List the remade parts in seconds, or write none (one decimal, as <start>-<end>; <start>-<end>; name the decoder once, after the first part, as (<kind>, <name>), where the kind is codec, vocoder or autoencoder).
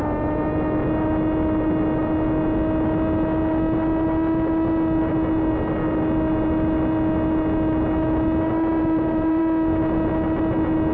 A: 8.8-9.4 (vocoder, BigVGAN v2)